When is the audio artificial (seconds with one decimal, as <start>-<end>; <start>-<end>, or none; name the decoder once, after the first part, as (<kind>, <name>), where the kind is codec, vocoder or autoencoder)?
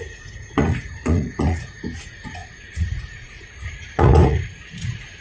0.0-5.2 (vocoder, Vocos)